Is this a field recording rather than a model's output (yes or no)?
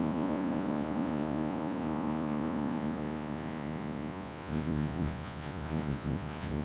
no